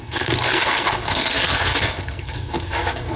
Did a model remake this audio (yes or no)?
yes